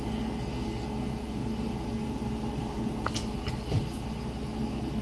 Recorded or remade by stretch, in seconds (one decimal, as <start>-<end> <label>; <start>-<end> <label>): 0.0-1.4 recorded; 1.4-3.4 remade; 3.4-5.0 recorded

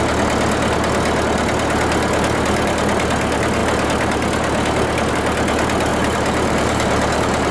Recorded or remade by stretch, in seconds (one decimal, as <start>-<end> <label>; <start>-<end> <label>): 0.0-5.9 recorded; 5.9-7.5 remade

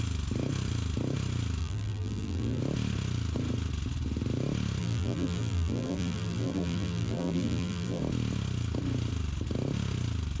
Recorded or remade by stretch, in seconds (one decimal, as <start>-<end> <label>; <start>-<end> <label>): 0.0-1.6 recorded; 1.6-2.6 remade; 2.6-4.8 recorded; 4.8-8.0 remade; 8.0-10.4 recorded

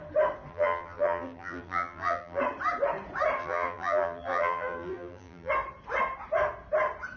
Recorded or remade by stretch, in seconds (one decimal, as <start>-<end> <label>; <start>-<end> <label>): 0.0-0.5 recorded; 0.5-2.4 remade; 2.4-3.4 recorded; 3.4-5.5 remade; 5.5-7.2 recorded

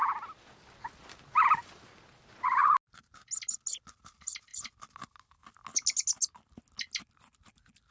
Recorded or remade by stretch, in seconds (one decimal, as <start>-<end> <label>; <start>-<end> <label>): 0.0-7.9 recorded